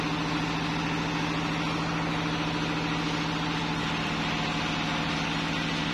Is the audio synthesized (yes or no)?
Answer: no